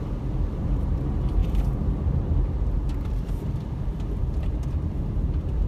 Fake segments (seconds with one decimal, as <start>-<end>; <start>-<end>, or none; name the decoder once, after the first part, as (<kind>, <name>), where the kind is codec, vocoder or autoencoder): 0.0-5.7 (vocoder, BigVGAN v2)